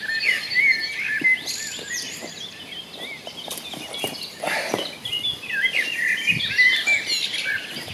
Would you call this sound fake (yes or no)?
no